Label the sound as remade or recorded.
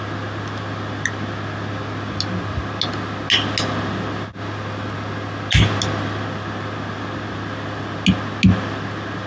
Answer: recorded